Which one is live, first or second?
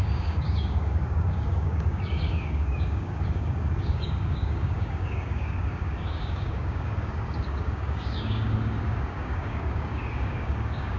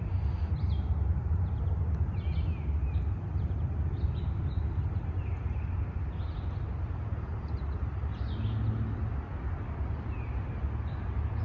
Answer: second